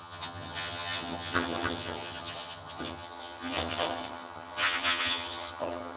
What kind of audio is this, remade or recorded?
remade